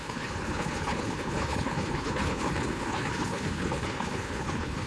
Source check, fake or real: fake